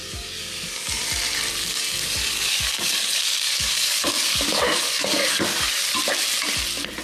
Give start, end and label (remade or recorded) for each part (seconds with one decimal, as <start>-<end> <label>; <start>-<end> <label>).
0.0-1.0 remade; 1.0-1.6 recorded; 1.6-5.8 remade; 5.8-7.0 recorded